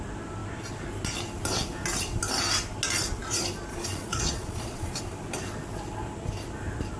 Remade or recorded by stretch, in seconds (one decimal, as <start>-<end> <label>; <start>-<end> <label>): 0.0-3.7 recorded; 3.7-5.0 remade; 5.0-7.0 recorded